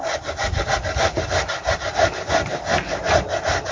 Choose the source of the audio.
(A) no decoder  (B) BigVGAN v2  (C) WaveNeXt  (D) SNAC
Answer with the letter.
A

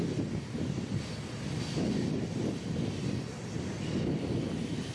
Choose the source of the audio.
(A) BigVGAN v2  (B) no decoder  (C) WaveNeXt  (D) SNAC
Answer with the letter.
B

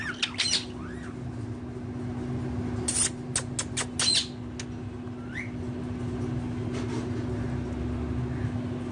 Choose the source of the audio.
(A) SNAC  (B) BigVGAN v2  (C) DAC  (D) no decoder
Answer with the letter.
D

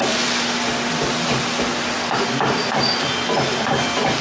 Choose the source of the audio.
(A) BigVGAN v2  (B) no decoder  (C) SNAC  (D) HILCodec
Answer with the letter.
B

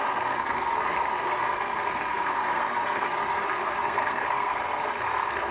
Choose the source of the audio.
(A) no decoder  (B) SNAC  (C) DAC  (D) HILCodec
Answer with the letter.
B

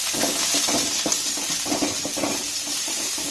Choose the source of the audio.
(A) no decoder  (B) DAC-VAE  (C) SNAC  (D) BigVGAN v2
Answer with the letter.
A